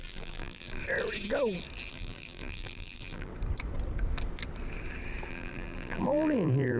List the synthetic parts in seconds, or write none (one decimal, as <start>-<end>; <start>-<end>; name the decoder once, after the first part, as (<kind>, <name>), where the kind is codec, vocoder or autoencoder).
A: 0.0-0.8 (vocoder, BigVGAN v2); 1.9-3.3; 5.3-6.8